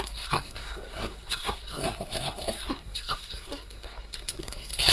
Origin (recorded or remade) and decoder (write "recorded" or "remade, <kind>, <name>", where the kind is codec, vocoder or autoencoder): remade, codec, SNAC